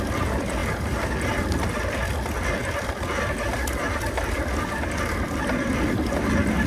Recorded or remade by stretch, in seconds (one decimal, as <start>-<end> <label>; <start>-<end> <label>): 0.0-6.7 recorded